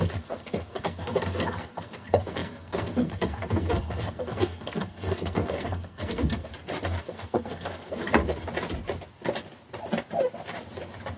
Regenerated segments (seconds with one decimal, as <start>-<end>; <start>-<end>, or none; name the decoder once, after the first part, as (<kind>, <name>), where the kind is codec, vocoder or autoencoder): 0.0-6.5 (codec, SNAC); 7.0-8.2